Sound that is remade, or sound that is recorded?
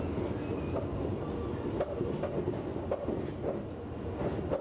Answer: recorded